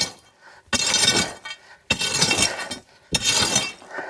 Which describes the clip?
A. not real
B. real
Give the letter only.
B